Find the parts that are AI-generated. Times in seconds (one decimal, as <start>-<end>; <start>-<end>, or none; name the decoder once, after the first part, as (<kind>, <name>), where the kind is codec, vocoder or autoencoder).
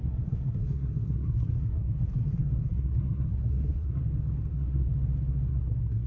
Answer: 0.0-4.0 (codec, SNAC); 4.5-4.9; 5.5-6.1